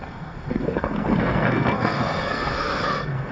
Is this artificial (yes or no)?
yes